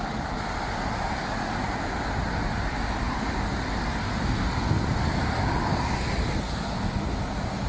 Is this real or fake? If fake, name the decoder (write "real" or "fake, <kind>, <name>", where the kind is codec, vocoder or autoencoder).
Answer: real